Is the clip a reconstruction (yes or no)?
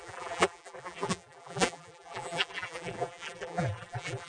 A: yes